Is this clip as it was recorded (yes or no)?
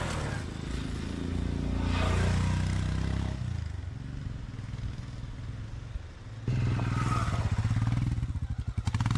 yes